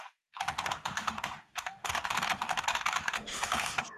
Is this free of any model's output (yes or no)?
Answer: no